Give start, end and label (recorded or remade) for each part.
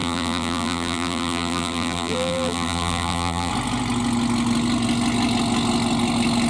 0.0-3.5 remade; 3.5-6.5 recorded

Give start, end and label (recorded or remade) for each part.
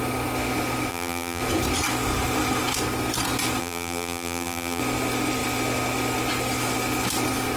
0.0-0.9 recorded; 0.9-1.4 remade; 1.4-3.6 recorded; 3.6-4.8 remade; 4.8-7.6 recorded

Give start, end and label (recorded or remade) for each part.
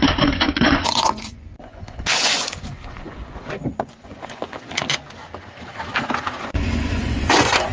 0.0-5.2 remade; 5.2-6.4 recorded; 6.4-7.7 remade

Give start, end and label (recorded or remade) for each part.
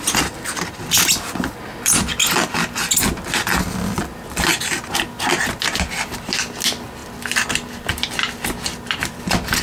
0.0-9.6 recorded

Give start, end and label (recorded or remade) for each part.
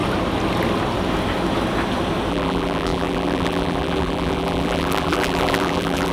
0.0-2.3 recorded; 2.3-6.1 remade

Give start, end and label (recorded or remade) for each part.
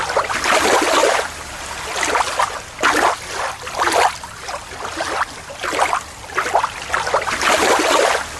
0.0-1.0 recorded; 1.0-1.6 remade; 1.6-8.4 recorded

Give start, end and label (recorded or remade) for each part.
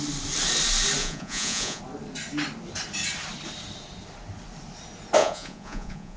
0.0-1.0 recorded; 1.0-1.8 remade; 1.8-5.2 recorded; 5.2-6.2 remade